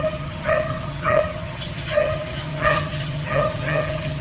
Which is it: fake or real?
fake